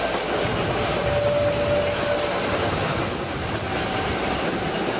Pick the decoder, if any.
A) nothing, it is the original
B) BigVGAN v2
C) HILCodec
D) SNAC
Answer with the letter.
A